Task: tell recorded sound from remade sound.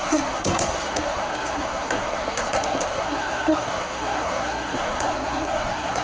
remade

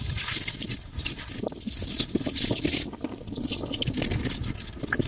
recorded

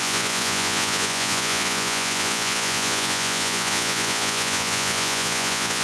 remade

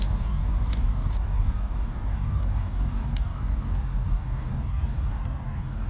remade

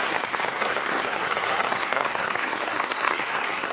remade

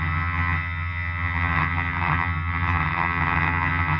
remade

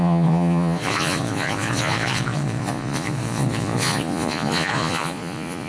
remade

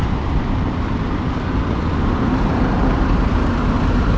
remade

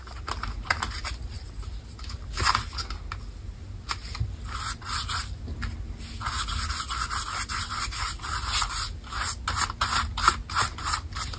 recorded